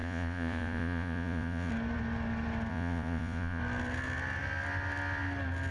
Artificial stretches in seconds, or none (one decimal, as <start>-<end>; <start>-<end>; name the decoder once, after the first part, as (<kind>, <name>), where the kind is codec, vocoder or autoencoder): 0.0-1.7 (vocoder, Vocos); 2.7-3.6